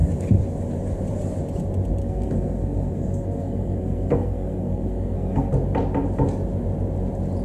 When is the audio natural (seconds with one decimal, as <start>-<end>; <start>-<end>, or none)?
0.0-2.0; 5.5-7.4